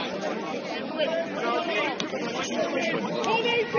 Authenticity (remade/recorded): recorded